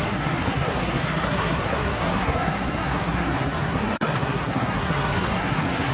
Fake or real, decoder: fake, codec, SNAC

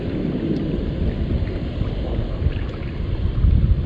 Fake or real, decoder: real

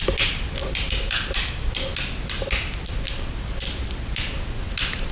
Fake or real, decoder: real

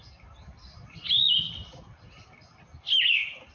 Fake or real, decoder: real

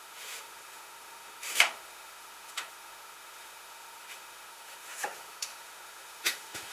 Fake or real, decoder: fake, autoencoder, DAC-VAE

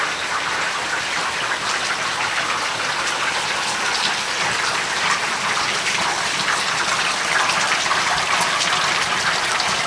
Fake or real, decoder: real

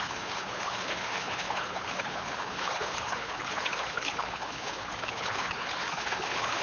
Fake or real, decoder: fake, codec, HILCodec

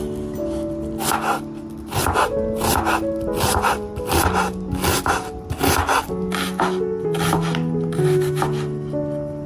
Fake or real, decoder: real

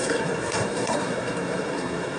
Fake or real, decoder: fake, codec, SNAC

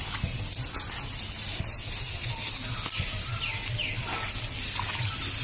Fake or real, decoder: real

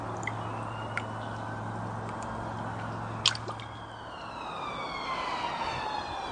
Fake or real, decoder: real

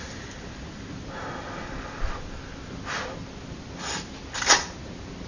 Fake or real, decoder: real